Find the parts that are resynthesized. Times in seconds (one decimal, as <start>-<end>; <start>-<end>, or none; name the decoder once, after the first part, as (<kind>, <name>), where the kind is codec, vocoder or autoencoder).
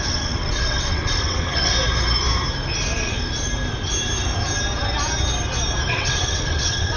0.0-1.7 (vocoder, WaveNeXt); 5.9-7.0